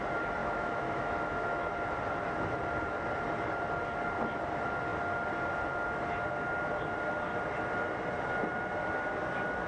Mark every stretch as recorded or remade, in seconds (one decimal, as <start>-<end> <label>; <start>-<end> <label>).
0.0-0.4 recorded; 0.4-1.7 remade; 1.7-9.7 recorded